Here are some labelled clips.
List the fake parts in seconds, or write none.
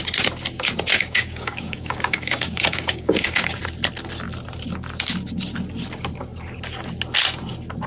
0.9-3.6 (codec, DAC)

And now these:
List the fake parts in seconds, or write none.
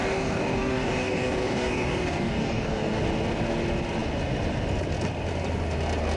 0.0-3.0 (codec, DAC)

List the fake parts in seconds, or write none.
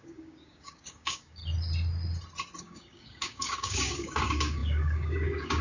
0.0-1.4 (codec, DAC); 2.6-5.6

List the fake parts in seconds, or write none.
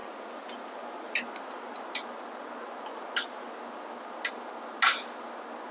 none